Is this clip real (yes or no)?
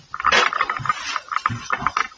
yes